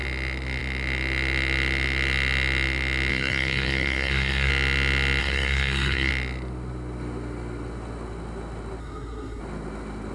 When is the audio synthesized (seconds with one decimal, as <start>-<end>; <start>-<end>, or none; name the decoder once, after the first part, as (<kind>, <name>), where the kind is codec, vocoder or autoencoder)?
3.1-4.5 (codec, SNAC); 5.2-6.1; 8.8-9.4

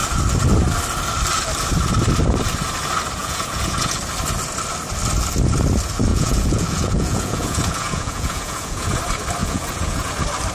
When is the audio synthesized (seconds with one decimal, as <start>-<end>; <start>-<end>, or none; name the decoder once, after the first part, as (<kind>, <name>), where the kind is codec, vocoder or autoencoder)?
3.2-4.0 (vocoder, Vocos); 6.1-9.0; 9.4-10.1

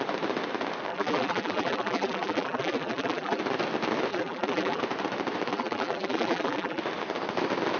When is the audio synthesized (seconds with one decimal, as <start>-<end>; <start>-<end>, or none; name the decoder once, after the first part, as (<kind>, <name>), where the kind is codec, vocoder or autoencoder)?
0.9-3.4 (vocoder, BigVGAN v2); 4.1-4.8; 5.5-6.8

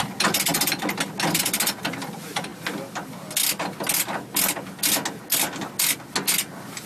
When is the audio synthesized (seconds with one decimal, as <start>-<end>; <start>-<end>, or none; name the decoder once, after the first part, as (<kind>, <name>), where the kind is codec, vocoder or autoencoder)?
none

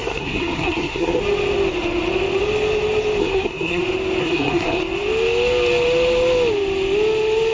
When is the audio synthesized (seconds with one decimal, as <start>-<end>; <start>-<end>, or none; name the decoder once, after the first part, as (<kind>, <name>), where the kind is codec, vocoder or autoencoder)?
0.0-1.2 (codec, SNAC); 3.2-3.8; 4.2-4.8

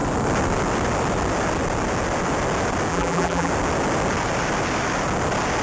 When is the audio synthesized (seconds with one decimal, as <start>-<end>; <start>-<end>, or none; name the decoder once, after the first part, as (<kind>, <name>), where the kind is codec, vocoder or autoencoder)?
2.9-3.5 (vocoder, BigVGAN v2)